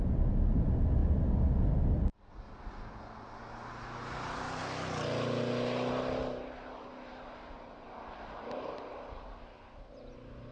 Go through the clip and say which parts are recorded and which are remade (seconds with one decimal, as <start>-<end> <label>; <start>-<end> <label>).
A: 0.0-10.5 recorded